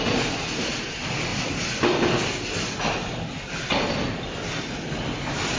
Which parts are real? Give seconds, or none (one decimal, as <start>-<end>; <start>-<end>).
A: 0.0-5.6